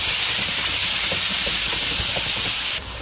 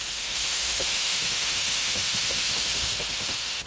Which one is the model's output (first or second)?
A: second